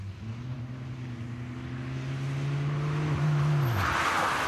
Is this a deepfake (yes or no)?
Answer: no